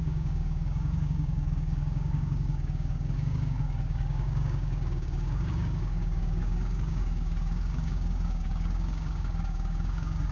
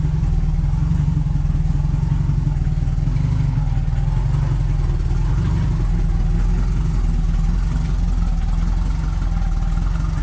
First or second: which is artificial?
first